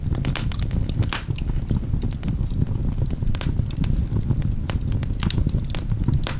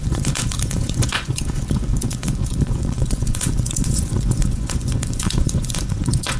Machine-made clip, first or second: second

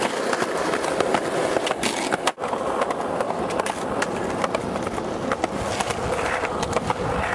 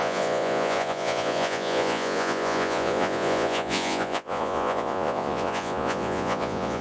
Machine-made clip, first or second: second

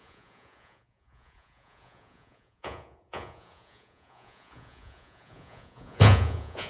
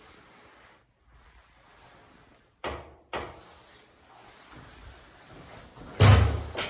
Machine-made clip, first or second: first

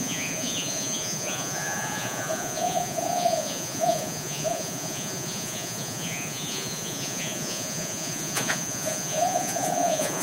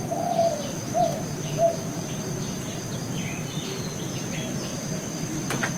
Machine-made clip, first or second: first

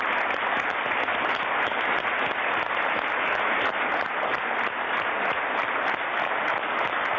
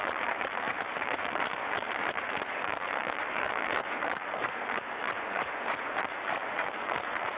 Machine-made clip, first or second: second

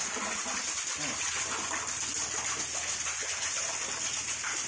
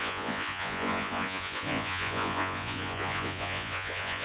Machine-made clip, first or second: second